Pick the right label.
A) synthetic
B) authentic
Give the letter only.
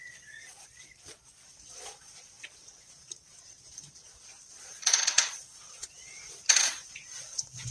A